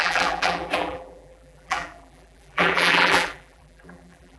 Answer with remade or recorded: remade